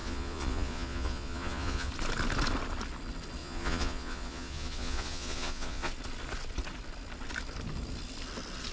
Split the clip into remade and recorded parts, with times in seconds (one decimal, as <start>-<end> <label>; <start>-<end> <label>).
0.0-1.9 remade; 1.9-3.4 recorded; 3.4-5.9 remade; 5.9-8.7 recorded